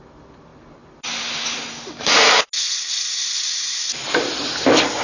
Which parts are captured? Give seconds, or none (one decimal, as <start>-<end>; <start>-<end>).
0.0-5.0

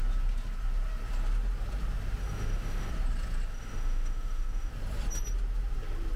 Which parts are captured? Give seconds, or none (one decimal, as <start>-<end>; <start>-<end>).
0.0-2.2; 2.9-3.5; 4.7-6.2

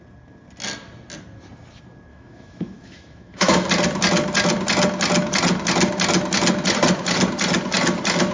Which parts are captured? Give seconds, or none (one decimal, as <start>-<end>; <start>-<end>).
0.0-2.1; 3.7-8.3